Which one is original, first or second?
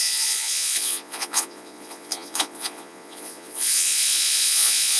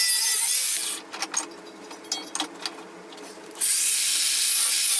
second